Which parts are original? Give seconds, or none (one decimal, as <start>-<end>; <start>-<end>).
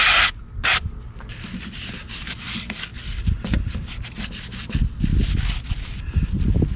0.0-6.8